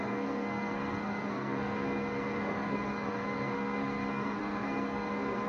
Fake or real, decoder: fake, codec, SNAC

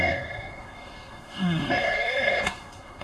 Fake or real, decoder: fake, codec, SNAC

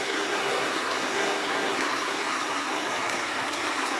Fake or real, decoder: fake, codec, SNAC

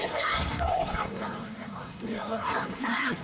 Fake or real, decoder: fake, codec, SNAC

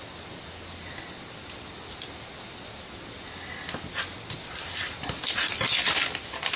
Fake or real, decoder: real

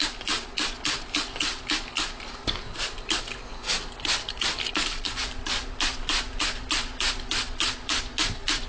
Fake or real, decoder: real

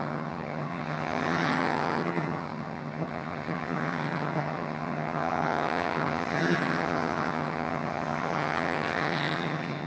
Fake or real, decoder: fake, vocoder, HiFi-GAN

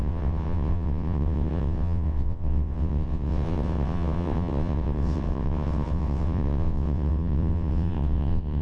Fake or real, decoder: fake, vocoder, WaveNeXt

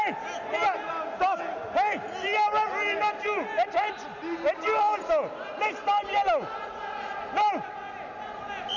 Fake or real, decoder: real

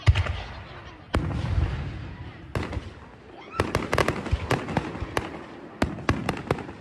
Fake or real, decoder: real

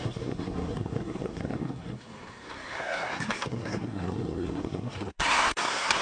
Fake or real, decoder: fake, codec, SNAC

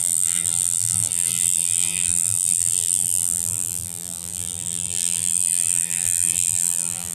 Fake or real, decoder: fake, vocoder, BigVGAN v2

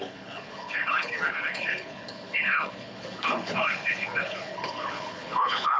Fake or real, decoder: fake, codec, HILCodec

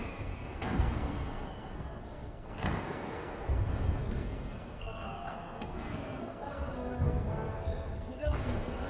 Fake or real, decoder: fake, codec, SNAC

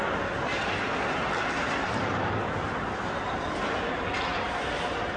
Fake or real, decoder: real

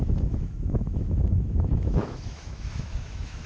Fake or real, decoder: fake, autoencoder, DAC-VAE